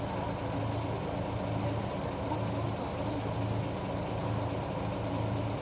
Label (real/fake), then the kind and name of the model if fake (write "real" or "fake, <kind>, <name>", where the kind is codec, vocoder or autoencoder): real